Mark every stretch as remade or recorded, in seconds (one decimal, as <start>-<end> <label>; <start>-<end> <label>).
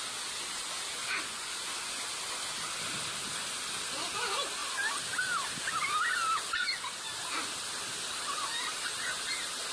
0.0-1.0 recorded; 1.0-2.0 remade; 2.0-9.7 recorded